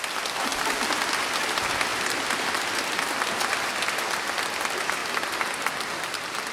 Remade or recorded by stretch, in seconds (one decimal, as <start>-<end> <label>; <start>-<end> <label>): 0.0-0.5 recorded; 0.5-1.2 remade; 1.2-1.9 recorded; 1.9-3.7 remade; 3.7-5.0 recorded; 5.0-6.5 remade